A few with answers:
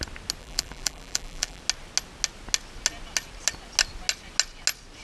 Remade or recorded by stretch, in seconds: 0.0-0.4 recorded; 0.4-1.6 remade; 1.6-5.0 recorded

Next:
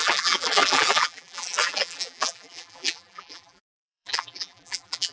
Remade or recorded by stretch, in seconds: 0.0-5.1 remade

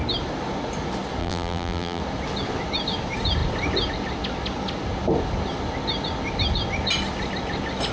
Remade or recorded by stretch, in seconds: 0.0-1.2 recorded; 1.2-2.0 remade; 2.0-7.9 recorded

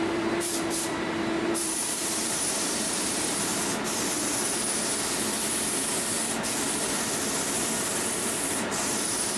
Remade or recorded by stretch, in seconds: 0.0-3.5 remade; 3.5-7.8 recorded; 7.8-9.4 remade

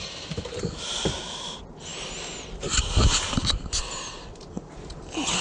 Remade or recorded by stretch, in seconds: 0.0-5.4 recorded

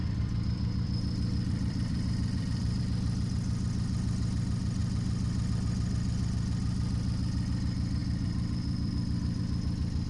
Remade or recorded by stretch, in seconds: 0.0-2.8 remade; 2.8-8.0 recorded; 8.0-9.4 remade; 9.4-10.1 recorded

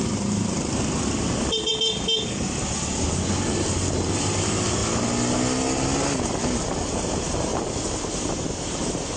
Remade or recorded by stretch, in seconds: 0.0-1.7 remade; 1.7-3.0 recorded; 3.0-4.8 remade; 4.8-6.9 recorded; 6.9-7.5 remade; 7.5-8.0 recorded; 8.0-9.2 remade

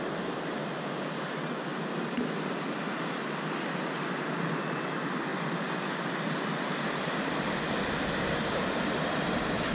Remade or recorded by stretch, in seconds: 0.0-9.7 recorded